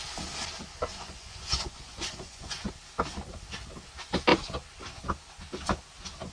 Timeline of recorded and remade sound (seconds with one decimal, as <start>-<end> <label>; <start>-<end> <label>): 0.0-0.9 recorded; 0.9-2.7 remade; 2.7-6.3 recorded